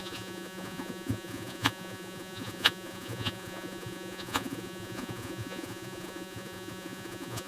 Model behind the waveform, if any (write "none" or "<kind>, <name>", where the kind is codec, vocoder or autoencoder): vocoder, Vocos